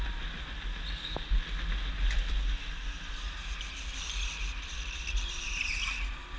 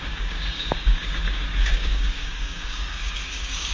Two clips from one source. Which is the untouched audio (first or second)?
first